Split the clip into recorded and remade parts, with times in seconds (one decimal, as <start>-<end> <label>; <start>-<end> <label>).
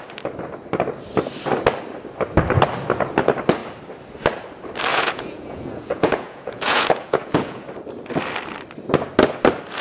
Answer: 0.0-4.9 recorded; 4.9-7.6 remade; 7.6-9.8 recorded